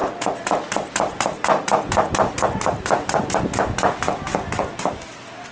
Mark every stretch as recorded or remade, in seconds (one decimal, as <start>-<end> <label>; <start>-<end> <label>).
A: 0.0-5.5 recorded